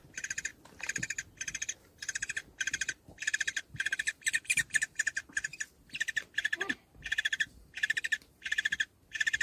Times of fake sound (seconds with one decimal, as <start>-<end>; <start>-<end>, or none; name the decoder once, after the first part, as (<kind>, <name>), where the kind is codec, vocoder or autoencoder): 0.0-0.5 (vocoder, BigVGAN v2); 2.6-5.5; 6.3-9.4